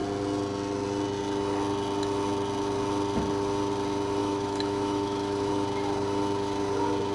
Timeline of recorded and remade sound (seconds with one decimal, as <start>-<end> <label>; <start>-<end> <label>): 0.0-4.2 recorded; 4.2-5.5 remade; 5.5-7.1 recorded

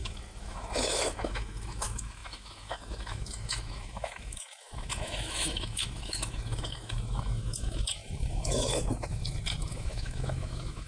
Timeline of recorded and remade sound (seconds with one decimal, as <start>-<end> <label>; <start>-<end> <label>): 0.0-10.9 remade

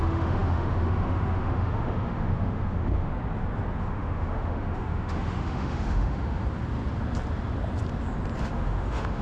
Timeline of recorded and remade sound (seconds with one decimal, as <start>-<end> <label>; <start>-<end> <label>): 0.0-3.1 remade; 3.1-3.8 recorded; 3.8-6.4 remade; 6.4-8.4 recorded; 8.4-9.2 remade